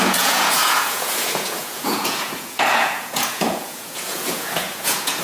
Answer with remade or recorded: remade